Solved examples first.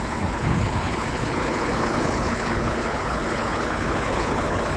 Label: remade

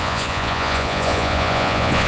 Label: remade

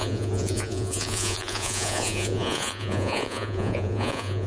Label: remade